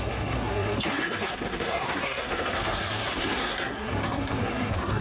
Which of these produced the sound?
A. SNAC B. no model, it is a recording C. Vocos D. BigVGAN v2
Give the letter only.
A